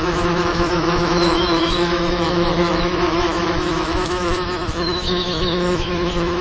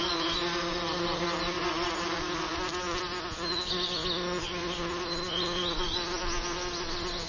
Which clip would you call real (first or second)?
second